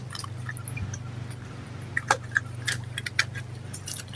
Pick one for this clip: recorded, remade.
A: recorded